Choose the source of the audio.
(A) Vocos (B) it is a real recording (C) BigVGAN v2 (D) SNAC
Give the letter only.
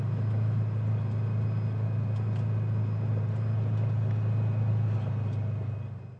B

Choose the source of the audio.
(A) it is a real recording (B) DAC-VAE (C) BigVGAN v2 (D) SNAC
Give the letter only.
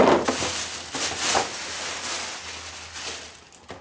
A